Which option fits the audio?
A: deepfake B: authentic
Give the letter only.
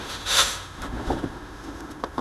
A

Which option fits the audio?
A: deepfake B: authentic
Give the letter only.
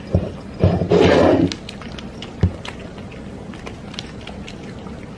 B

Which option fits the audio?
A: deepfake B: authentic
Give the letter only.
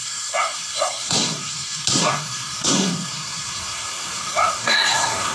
A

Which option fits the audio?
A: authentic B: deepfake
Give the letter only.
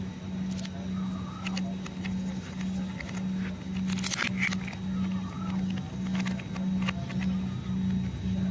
A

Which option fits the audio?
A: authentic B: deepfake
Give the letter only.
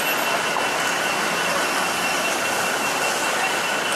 A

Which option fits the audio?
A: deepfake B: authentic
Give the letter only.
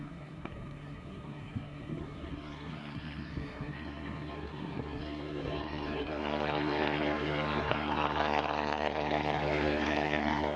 A